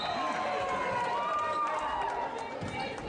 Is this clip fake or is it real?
real